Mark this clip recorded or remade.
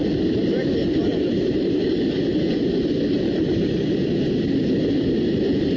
remade